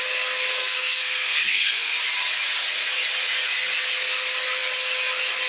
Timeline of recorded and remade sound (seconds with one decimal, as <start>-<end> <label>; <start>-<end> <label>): 0.0-0.5 recorded; 0.5-1.9 remade; 1.9-5.5 recorded